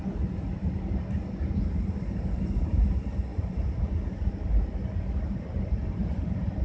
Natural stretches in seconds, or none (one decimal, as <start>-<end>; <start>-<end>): 0.0-3.3